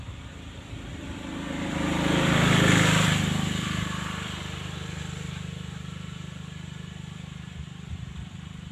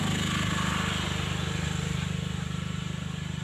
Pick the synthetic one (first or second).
first